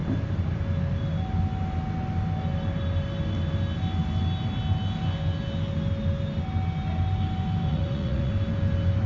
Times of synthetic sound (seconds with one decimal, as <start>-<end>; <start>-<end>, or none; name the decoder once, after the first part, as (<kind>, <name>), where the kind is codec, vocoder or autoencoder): 7.7-8.3 (vocoder, Vocos)